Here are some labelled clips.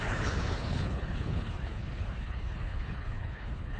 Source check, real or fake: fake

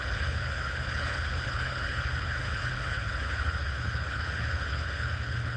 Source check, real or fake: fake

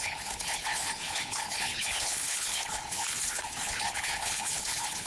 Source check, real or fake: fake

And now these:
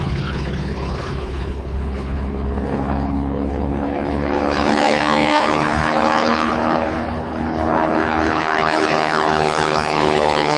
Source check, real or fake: fake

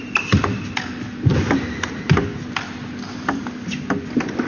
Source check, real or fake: real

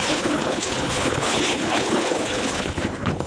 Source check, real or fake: fake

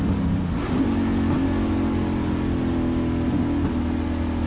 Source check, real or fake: real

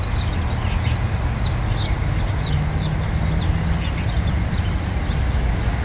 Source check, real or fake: real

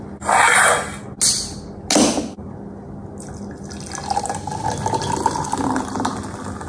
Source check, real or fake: real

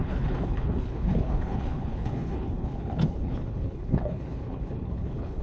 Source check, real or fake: fake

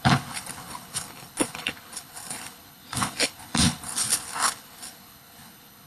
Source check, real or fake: fake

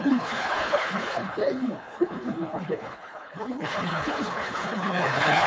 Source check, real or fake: fake